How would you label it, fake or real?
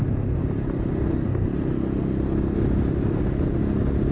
real